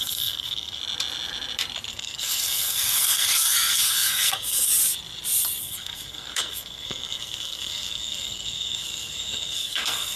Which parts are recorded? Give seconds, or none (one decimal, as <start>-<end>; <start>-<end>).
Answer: 0.8-1.9; 4.7-5.6